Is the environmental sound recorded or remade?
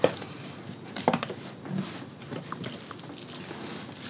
recorded